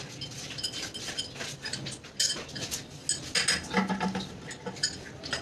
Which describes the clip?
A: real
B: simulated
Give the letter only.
A